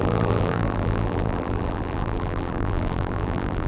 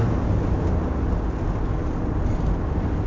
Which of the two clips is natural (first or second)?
second